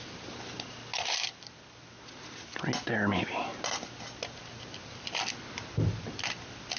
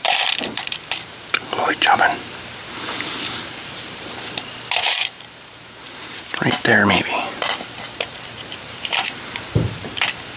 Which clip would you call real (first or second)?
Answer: first